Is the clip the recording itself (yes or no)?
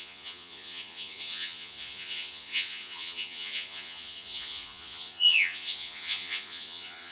no